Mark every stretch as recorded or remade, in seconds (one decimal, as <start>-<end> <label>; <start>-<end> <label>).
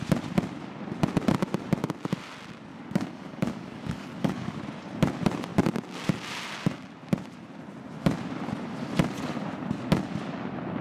0.0-2.7 recorded; 2.7-4.6 remade; 4.6-10.8 recorded